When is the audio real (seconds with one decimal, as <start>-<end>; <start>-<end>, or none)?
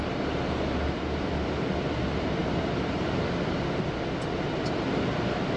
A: 0.0-5.6